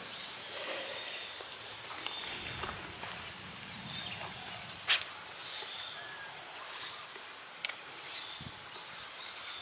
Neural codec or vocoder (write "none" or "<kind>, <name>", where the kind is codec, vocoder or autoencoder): none